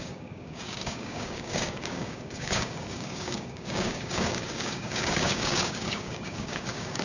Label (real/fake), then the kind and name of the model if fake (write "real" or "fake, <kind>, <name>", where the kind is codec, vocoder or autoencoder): fake, codec, DAC